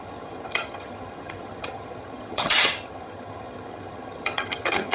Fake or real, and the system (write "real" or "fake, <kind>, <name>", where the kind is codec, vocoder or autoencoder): fake, vocoder, HiFi-GAN